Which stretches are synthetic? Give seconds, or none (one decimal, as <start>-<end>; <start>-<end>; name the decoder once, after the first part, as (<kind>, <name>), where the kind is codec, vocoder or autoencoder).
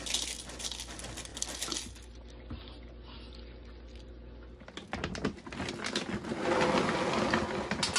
none